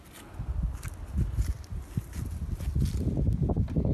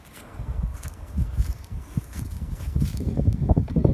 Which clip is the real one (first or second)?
first